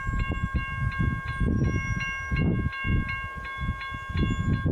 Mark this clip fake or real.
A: real